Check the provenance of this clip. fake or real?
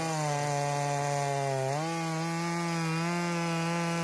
real